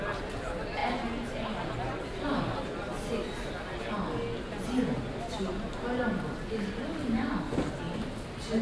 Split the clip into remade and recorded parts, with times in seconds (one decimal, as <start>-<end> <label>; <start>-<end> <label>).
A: 0.0-8.6 recorded